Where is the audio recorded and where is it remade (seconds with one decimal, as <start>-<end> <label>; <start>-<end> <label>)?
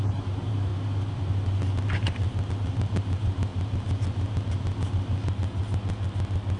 0.0-0.7 remade; 0.7-2.5 recorded; 2.5-3.5 remade; 3.5-6.6 recorded